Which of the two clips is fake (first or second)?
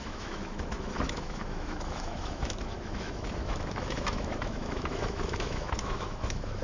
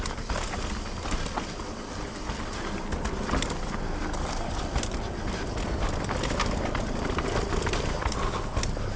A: first